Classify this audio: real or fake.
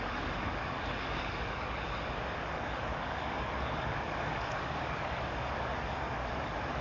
fake